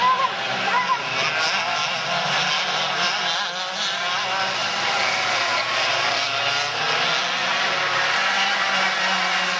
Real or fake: real